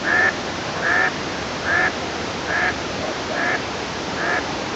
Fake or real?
fake